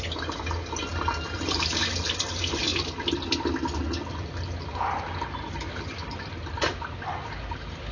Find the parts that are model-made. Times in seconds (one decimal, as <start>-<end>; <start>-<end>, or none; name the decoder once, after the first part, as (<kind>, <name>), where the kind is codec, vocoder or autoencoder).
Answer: none